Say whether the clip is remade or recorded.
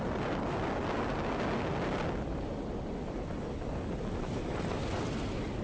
recorded